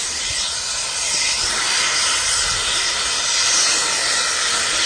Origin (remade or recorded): recorded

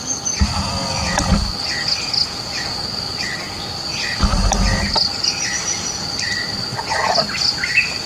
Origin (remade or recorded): recorded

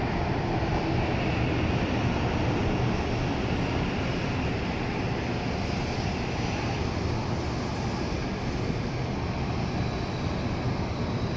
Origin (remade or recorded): recorded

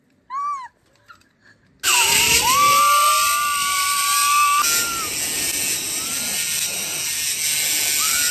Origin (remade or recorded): recorded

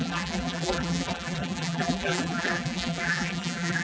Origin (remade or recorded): remade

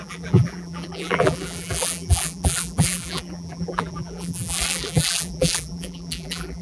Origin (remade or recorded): remade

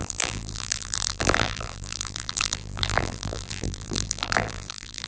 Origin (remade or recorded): remade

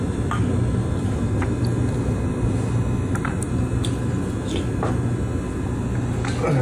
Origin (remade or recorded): recorded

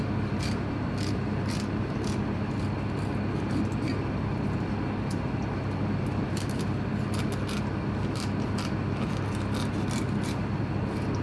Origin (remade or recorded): recorded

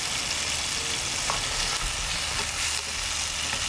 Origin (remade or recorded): recorded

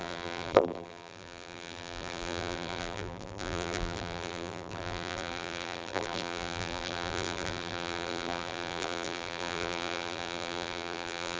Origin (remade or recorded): remade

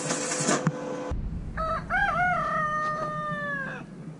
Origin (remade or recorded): recorded